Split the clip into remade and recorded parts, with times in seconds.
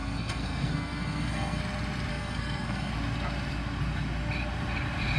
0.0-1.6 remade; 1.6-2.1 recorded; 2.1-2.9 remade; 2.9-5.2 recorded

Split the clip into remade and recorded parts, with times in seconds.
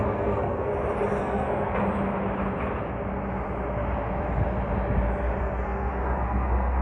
0.0-0.7 remade; 0.7-1.2 recorded; 1.2-1.8 remade; 1.8-5.4 recorded; 5.4-6.8 remade